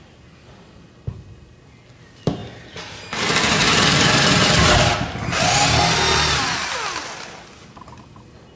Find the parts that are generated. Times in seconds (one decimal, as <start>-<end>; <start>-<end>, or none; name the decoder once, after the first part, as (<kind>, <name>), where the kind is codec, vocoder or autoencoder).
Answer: none